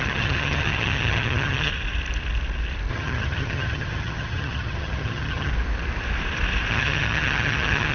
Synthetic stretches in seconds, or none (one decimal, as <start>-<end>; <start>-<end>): 0.0-1.7; 2.9-5.5; 6.7-7.9